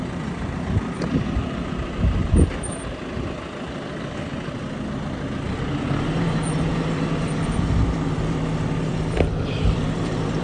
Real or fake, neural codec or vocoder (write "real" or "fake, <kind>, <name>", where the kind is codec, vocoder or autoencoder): fake, vocoder, BigVGAN v2